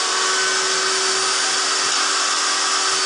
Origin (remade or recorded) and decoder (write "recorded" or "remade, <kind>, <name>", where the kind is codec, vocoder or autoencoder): recorded